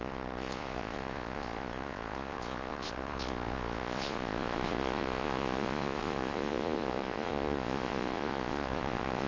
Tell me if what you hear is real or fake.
fake